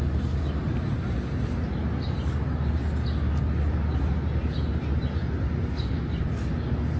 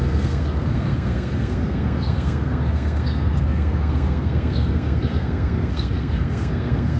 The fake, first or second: second